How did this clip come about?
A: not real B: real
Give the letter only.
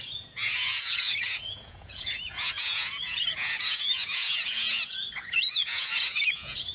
A